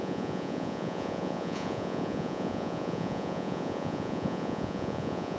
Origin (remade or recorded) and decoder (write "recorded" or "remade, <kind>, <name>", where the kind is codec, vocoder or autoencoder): remade, vocoder, Vocos